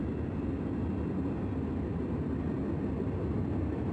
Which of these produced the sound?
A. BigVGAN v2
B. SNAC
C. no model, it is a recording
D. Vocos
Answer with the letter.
C